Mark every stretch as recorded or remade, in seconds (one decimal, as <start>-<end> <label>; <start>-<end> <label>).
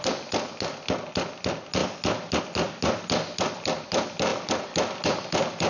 0.0-5.7 recorded